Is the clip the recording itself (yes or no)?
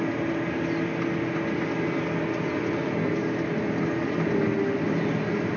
yes